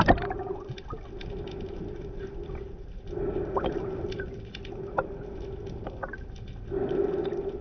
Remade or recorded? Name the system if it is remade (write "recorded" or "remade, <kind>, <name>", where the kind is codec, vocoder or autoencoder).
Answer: recorded